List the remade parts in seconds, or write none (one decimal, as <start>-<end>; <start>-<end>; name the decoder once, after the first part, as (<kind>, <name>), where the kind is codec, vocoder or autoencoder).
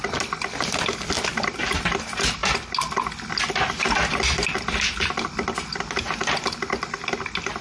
none